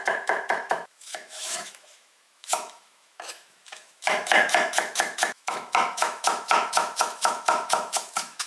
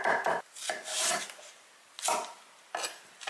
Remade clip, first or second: first